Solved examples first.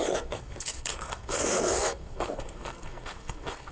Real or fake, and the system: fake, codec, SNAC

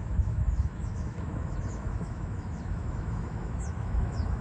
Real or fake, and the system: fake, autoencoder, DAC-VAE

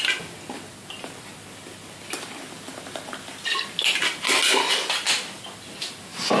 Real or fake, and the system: real